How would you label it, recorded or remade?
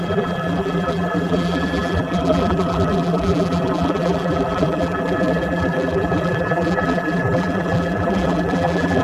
remade